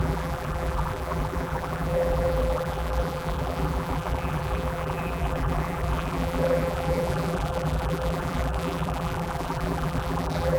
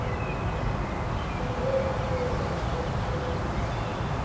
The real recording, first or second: second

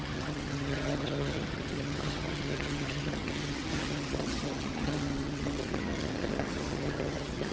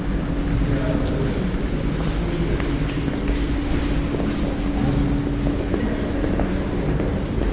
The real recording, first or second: second